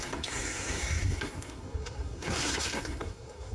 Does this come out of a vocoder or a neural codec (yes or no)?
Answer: yes